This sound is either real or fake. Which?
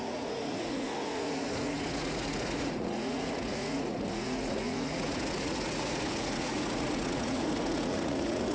fake